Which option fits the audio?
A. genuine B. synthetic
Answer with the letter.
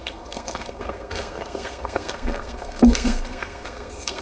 B